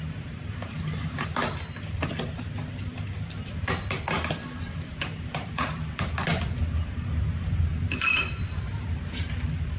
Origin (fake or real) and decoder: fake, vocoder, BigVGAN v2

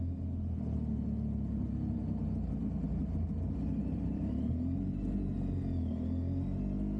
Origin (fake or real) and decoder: real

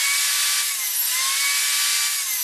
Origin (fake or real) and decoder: real